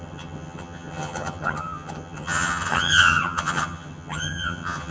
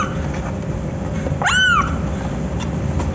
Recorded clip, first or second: second